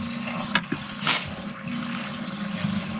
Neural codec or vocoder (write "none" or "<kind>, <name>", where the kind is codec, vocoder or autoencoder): none